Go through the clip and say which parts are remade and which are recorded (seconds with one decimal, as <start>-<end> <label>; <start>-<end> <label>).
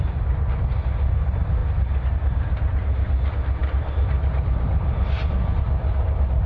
0.0-1.6 recorded; 1.6-2.1 remade; 2.1-3.6 recorded; 3.6-5.2 remade; 5.2-6.5 recorded